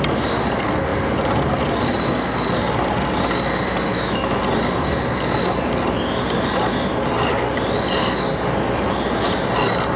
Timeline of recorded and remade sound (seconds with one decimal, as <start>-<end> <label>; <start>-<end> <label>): 0.0-3.9 recorded; 3.9-4.4 remade; 4.4-10.0 recorded